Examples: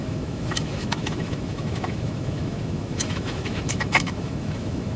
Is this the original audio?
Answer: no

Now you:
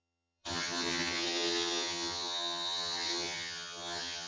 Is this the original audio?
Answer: no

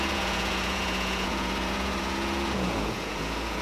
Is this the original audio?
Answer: no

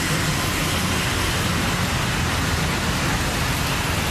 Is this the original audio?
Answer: yes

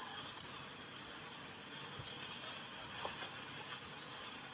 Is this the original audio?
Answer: yes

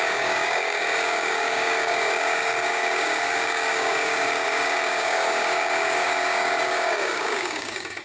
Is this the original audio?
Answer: no